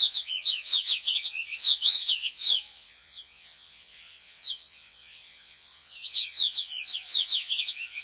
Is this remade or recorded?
remade